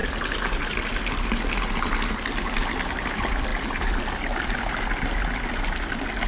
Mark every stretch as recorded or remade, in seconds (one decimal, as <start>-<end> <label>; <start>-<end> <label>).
0.0-6.3 recorded